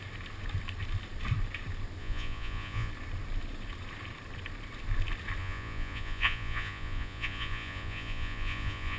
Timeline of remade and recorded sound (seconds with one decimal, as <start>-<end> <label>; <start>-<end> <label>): 0.0-2.0 recorded; 2.0-2.9 remade; 2.9-5.4 recorded; 5.4-9.0 remade